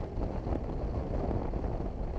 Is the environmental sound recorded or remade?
recorded